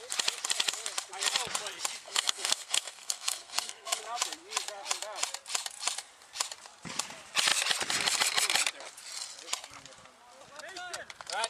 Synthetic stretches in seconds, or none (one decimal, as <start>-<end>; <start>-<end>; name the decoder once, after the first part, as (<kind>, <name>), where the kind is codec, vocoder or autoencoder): 2.0-4.0 (codec, SNAC)